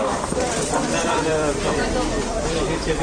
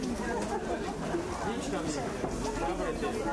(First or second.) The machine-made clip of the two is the first